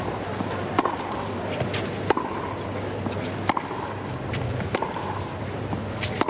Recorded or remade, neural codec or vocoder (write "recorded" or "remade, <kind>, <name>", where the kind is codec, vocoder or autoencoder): recorded